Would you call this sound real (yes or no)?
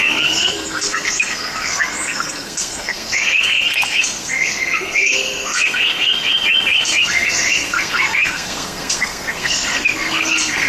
no